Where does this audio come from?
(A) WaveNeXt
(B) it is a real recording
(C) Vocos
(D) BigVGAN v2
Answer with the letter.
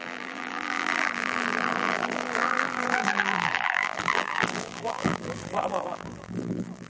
D